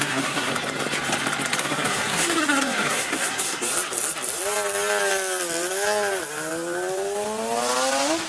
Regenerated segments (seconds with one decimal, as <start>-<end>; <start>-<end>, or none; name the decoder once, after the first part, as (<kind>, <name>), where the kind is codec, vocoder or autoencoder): 0.0-0.5 (codec, SNAC); 1.6-3.7